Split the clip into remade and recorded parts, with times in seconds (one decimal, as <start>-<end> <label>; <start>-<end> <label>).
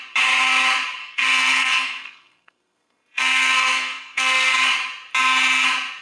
0.0-1.0 recorded; 1.0-4.5 remade; 4.5-6.0 recorded